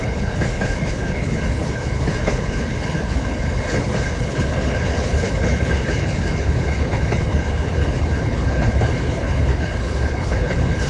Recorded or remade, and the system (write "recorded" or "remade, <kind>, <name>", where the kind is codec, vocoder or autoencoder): remade, codec, HILCodec